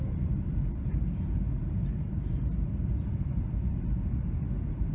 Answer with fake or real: fake